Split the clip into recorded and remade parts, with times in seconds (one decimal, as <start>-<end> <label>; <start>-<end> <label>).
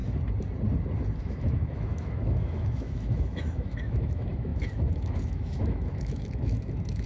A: 0.0-1.2 recorded; 1.2-7.1 remade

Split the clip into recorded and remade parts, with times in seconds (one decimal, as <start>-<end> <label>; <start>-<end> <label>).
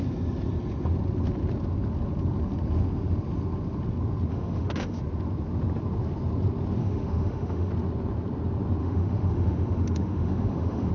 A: 0.0-4.3 recorded; 4.3-5.0 remade; 5.0-6.8 recorded; 6.8-7.7 remade; 7.7-8.8 recorded; 8.8-10.9 remade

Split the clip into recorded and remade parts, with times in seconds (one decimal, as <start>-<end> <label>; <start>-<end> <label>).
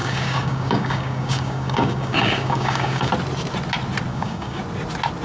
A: 0.0-3.1 remade; 3.1-4.1 recorded; 4.1-4.6 remade; 4.6-5.2 recorded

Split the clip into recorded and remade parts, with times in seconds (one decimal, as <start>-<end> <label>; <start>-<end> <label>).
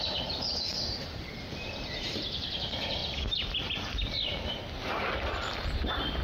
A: 0.0-6.2 recorded